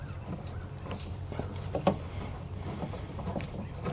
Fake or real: fake